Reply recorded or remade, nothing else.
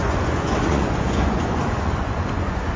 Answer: remade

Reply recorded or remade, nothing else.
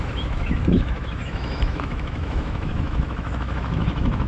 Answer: remade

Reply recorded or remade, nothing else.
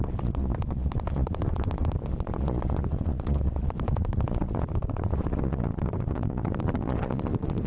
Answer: remade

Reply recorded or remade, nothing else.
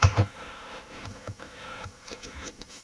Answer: remade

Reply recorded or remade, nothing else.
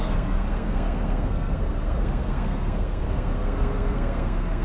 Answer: remade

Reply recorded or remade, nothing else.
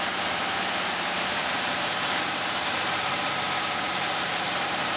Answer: remade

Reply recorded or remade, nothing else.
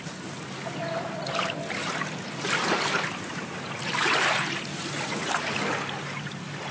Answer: recorded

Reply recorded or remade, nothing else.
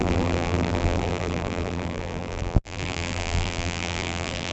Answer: remade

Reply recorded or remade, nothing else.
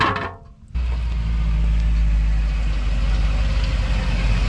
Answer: recorded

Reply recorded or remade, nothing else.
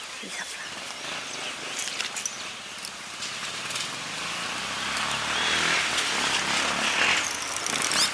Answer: recorded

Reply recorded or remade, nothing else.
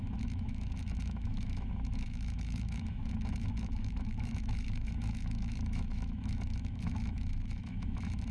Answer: remade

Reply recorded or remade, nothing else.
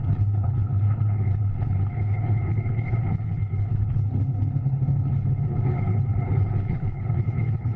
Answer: remade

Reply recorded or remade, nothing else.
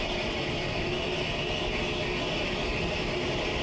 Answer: recorded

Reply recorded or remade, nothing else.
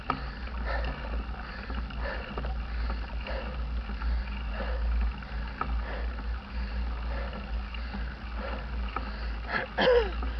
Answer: recorded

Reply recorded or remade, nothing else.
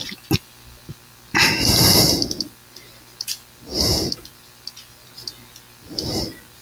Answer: recorded